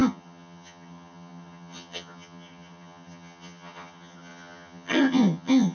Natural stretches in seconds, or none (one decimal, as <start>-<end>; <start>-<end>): none